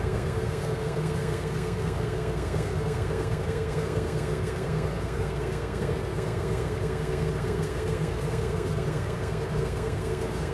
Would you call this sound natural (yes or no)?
no